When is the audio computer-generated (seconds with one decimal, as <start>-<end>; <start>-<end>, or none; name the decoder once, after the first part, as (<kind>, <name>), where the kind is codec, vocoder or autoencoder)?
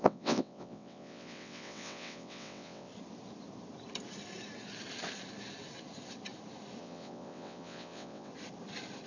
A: 0.0-2.9 (vocoder, WaveNeXt); 6.8-8.3